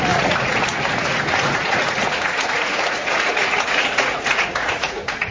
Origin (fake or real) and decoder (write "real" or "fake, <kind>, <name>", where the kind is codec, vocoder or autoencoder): fake, vocoder, Vocos